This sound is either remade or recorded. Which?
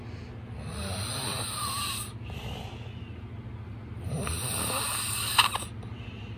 recorded